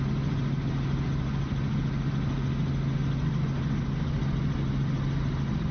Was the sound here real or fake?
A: real